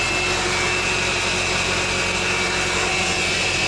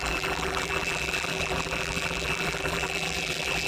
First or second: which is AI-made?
second